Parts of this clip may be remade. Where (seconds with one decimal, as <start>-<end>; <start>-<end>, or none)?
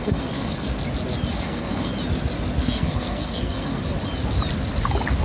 0.0-0.7; 1.3-1.9; 2.6-3.8